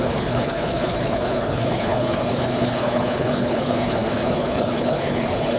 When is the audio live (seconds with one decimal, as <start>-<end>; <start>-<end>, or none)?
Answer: none